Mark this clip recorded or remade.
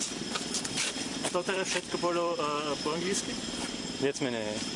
remade